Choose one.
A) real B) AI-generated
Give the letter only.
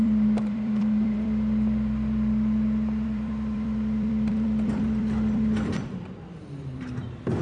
B